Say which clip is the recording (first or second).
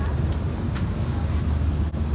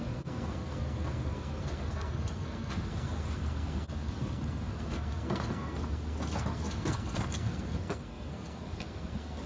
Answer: first